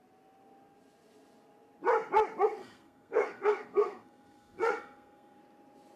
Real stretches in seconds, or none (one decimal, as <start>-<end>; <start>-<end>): 0.0-2.6; 5.4-6.0